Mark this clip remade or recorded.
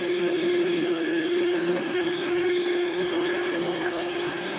remade